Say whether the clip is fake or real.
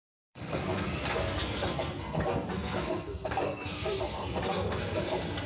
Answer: fake